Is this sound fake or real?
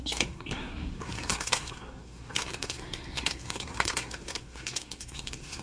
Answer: fake